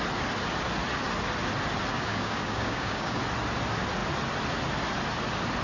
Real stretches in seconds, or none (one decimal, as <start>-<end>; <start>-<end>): 0.0-1.9; 3.2-5.6